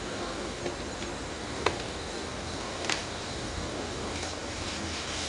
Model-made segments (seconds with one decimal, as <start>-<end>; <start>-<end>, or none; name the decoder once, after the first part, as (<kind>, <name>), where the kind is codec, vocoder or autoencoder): 0.0-0.6 (codec, DAC); 1.3-5.3